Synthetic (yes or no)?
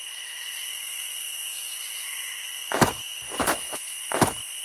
yes